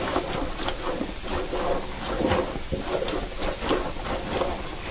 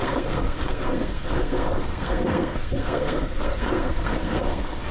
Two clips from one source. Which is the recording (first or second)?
first